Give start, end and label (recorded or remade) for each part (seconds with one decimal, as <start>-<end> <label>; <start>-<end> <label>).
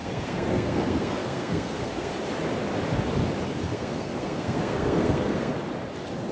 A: 0.0-2.1 remade; 2.1-3.7 recorded; 3.7-5.5 remade; 5.5-6.3 recorded